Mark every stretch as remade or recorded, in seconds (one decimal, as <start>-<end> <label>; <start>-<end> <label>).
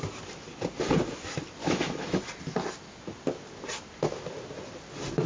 0.0-1.6 recorded; 1.6-2.2 remade; 2.2-5.3 recorded